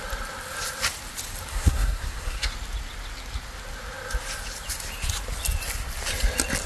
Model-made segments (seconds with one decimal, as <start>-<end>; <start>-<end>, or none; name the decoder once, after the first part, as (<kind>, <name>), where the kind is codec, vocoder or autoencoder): 1.5-2.5 (codec, SNAC)